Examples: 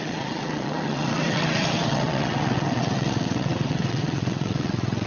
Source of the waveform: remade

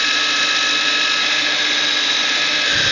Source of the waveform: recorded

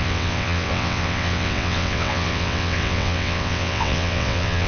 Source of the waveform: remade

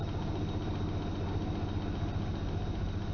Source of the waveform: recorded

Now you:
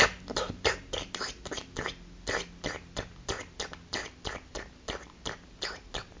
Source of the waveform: recorded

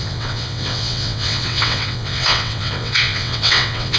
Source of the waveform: remade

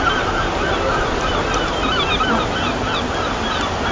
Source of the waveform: recorded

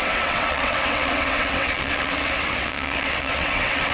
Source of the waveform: remade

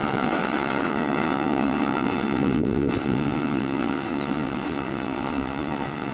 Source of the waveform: remade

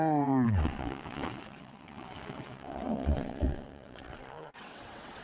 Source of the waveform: remade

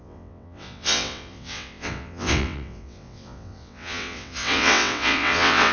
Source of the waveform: remade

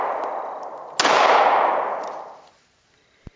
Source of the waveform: recorded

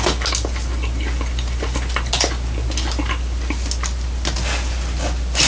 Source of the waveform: recorded